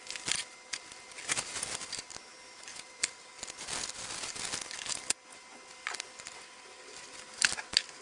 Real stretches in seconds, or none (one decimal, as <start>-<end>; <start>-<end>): 0.0-8.0